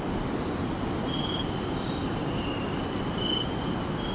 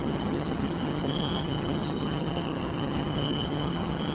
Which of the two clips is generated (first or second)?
second